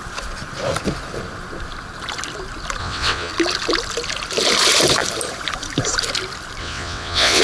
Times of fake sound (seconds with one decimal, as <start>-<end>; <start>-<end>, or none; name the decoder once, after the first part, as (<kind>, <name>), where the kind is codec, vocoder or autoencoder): 2.8-3.3 (vocoder, WaveNeXt); 6.6-7.4